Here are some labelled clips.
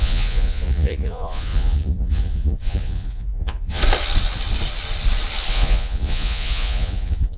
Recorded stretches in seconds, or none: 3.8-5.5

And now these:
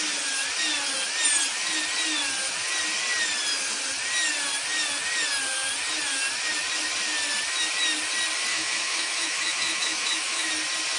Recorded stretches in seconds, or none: 0.0-8.5; 10.5-11.0

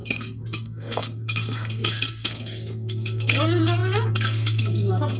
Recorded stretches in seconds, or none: none

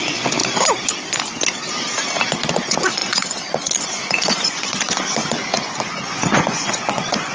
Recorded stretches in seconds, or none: 0.4-2.5

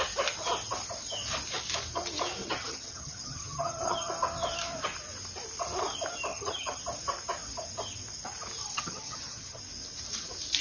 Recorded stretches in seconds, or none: 0.0-2.4; 4.1-6.3; 6.8-8.6; 9.6-10.6